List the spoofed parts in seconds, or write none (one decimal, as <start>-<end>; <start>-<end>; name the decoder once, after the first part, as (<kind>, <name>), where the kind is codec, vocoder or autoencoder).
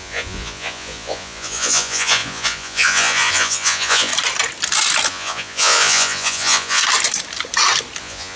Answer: 0.0-4.1 (vocoder, Vocos); 5.1-6.8; 8.0-8.4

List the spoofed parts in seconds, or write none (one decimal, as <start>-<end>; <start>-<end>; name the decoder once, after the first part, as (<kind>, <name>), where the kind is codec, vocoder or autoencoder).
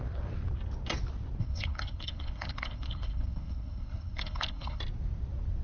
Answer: 1.4-4.8 (codec, HILCodec)